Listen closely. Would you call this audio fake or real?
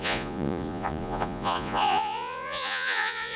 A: fake